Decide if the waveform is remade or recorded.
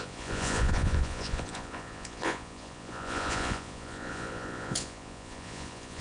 remade